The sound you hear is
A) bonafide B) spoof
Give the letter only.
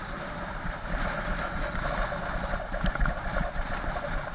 A